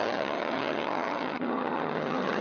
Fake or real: fake